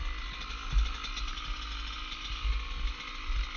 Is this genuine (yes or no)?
yes